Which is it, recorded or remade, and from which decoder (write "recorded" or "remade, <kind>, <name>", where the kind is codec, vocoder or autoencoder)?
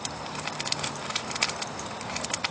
remade, vocoder, BigVGAN v2